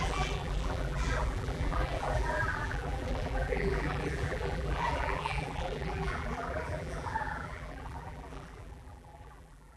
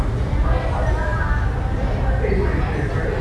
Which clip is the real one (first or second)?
second